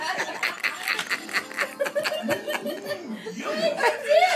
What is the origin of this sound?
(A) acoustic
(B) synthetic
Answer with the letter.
A